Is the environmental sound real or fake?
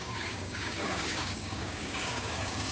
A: fake